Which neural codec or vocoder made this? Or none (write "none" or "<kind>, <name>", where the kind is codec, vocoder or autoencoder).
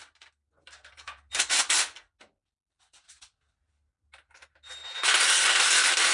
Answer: none